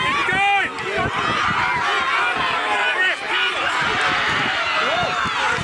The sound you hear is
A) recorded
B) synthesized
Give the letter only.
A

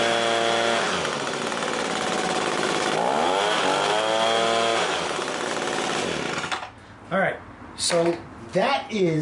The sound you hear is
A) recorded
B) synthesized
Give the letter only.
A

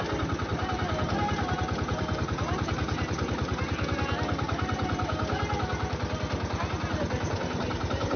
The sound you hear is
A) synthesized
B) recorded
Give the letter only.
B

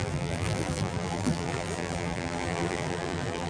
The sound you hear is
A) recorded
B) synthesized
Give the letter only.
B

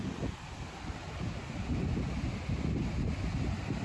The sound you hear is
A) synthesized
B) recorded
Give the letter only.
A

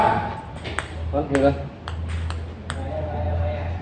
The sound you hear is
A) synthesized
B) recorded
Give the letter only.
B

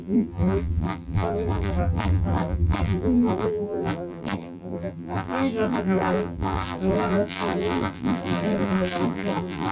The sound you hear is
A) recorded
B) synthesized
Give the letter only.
B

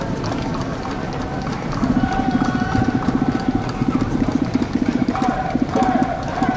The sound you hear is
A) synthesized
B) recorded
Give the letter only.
B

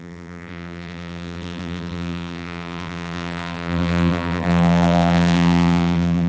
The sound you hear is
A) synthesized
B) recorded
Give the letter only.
A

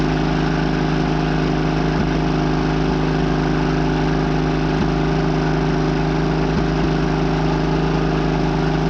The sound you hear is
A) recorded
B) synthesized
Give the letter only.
A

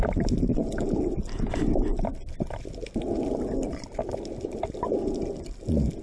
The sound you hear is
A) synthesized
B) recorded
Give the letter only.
B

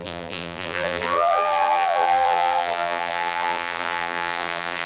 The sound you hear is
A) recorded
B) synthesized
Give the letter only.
B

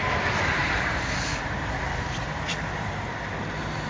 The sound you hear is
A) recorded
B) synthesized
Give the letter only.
B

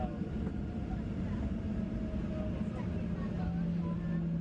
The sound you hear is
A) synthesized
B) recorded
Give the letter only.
B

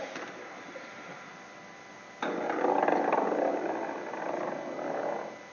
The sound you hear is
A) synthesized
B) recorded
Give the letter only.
B